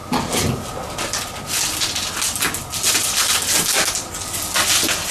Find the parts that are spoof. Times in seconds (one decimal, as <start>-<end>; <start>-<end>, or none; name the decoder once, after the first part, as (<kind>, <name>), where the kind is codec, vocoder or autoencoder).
none

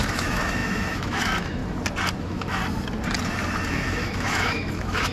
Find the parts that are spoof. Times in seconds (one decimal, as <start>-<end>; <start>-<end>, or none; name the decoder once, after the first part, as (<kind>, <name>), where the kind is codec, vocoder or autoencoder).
0.0-1.6 (autoencoder, DAC-VAE); 2.2-2.6; 3.7-5.1

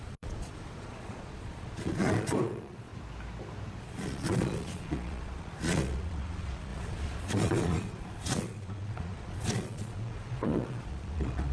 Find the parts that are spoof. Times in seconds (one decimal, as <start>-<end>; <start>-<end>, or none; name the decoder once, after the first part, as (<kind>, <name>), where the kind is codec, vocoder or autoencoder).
0.0-2.9 (vocoder, Vocos); 3.8-11.5

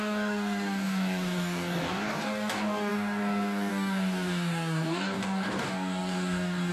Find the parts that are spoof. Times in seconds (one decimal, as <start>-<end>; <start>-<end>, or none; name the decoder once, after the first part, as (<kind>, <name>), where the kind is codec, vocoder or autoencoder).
0.0-6.7 (codec, DAC)

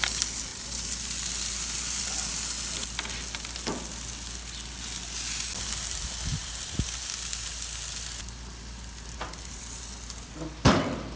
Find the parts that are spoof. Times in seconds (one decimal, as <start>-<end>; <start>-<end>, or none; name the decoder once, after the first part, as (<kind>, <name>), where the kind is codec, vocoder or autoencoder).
0.5-2.0 (vocoder, BigVGAN v2); 6.3-7.0